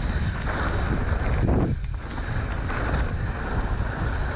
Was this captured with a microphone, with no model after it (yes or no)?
yes